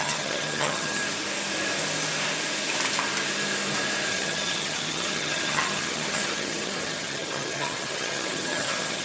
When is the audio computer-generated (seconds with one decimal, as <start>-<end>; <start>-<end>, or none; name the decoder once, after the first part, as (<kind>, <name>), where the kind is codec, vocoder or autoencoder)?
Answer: 0.0-1.0 (vocoder, HiFi-GAN); 4.1-9.0